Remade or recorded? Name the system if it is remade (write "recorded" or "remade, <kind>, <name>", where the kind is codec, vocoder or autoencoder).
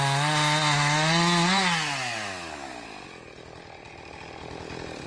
recorded